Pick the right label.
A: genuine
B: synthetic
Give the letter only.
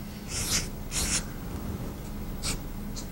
A